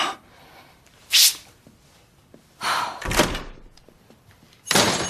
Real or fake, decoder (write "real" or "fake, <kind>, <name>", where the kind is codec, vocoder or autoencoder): fake, vocoder, BigVGAN v2